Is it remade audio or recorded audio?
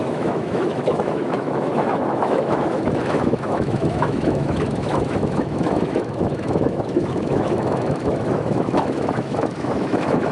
remade